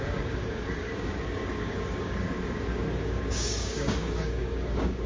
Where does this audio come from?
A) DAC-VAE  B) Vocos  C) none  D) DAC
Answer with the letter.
D